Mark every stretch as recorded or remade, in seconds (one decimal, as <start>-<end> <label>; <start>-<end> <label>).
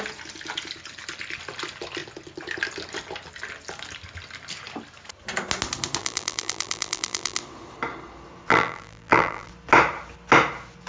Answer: 0.0-6.0 recorded; 6.0-7.4 remade; 7.4-8.5 recorded; 8.5-9.5 remade; 9.5-10.9 recorded